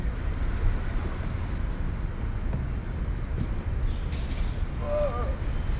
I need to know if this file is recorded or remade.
recorded